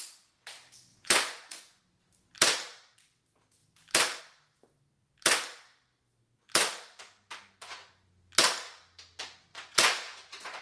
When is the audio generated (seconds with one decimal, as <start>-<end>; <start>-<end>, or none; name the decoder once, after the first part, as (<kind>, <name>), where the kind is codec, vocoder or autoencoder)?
0.9-1.8 (vocoder, Vocos); 9.5-10.6